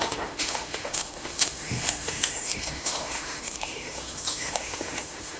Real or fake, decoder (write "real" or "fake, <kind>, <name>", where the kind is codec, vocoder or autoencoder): fake, autoencoder, DAC-VAE